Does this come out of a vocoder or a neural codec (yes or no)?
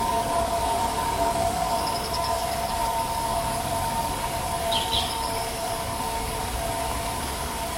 yes